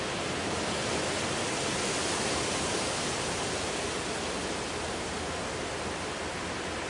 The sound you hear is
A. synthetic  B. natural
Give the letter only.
B